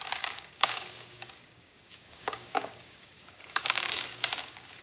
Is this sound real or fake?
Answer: fake